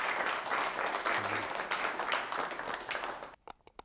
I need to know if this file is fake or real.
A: real